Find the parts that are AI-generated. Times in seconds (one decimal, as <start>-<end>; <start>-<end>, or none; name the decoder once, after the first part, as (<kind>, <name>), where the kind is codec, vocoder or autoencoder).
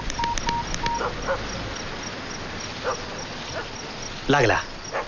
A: none